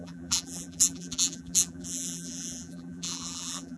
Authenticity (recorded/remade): remade